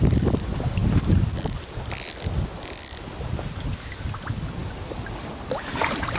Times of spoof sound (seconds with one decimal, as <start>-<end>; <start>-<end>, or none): none